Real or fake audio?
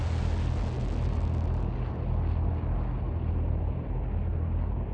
real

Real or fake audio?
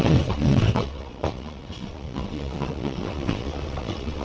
fake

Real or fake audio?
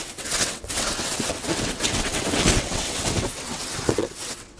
fake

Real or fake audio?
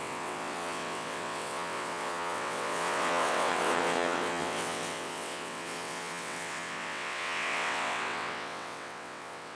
fake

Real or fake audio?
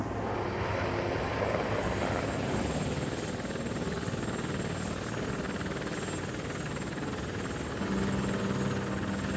real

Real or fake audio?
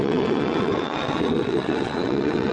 fake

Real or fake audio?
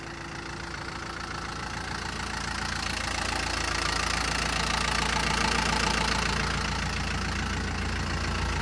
real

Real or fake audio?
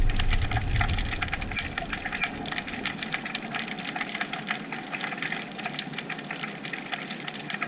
real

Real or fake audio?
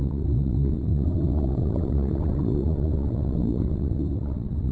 fake